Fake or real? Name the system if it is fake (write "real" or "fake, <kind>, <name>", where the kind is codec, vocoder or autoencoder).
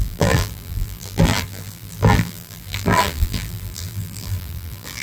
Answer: fake, vocoder, BigVGAN v2